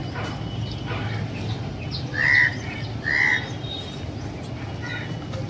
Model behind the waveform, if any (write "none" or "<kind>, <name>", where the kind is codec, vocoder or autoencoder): none